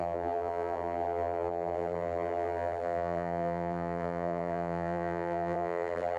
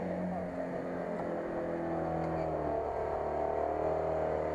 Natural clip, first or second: second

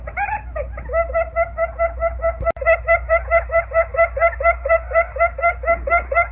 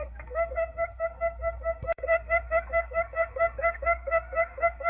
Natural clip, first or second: first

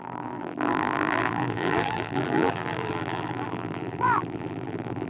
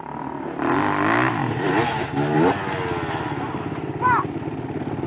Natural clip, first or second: second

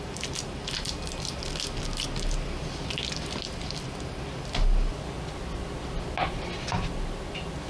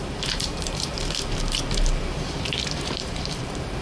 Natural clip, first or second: first